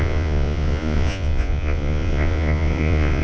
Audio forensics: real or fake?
fake